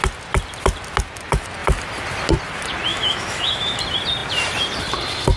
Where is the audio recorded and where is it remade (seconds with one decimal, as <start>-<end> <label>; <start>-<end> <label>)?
0.0-2.9 recorded; 2.9-3.8 remade; 3.8-5.4 recorded